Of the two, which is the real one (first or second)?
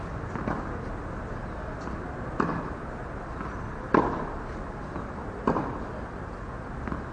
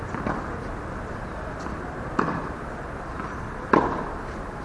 first